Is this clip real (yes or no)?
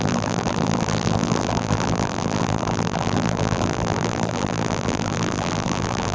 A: no